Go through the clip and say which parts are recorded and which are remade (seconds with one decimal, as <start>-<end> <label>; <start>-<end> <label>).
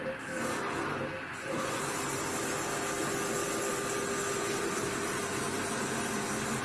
0.0-1.3 recorded; 1.3-1.8 remade; 1.8-6.6 recorded